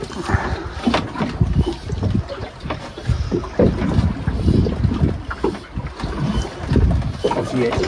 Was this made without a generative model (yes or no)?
yes